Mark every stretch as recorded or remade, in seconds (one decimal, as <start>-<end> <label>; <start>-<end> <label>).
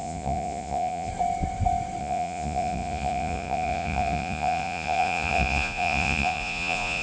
0.0-1.1 remade; 1.1-2.0 recorded; 2.0-7.0 remade